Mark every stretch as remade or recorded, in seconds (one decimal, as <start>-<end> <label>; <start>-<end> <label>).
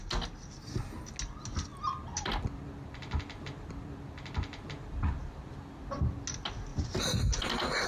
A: 0.0-1.7 recorded; 1.7-5.8 remade; 5.8-6.7 recorded; 6.7-7.5 remade; 7.5-7.9 recorded